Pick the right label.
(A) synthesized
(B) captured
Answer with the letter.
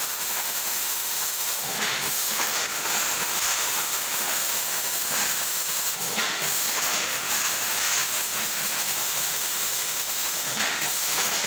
A